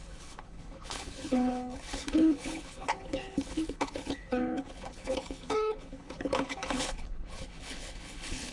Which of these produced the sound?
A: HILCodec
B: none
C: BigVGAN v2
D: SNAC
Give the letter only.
A